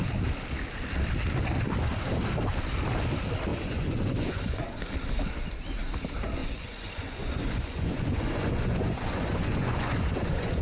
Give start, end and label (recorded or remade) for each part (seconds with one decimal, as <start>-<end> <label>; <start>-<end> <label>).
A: 0.0-3.5 recorded; 3.5-4.8 remade; 4.8-6.4 recorded; 6.4-10.6 remade